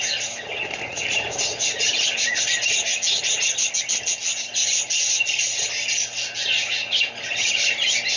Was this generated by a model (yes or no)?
no